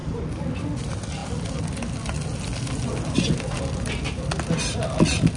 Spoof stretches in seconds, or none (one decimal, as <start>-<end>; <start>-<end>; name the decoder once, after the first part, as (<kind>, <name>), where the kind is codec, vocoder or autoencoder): none

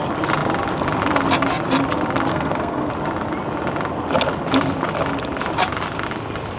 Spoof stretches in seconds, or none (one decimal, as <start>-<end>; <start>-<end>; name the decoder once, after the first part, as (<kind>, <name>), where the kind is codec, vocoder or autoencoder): 2.3-2.9 (codec, SNAC)